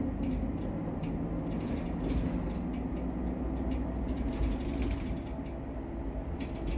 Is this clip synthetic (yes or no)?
no